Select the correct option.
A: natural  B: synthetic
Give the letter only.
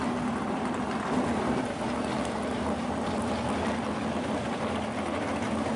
A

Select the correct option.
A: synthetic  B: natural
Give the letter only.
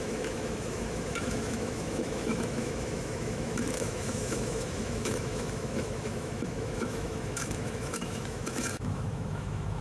A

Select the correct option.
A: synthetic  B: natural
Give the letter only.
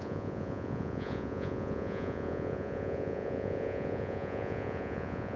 A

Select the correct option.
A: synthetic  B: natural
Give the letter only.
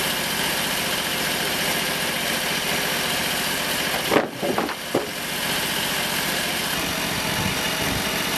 B